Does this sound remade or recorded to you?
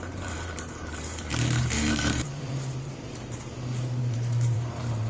remade